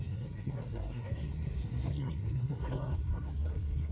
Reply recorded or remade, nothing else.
remade